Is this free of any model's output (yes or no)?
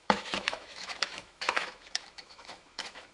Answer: no